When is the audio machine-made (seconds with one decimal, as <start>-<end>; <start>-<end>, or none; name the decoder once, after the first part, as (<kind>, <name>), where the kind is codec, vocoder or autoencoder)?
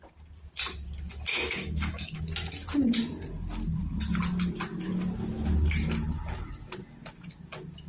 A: 1.3-2.2 (autoencoder, DAC-VAE)